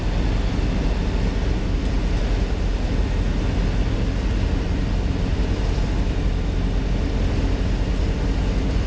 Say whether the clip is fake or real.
real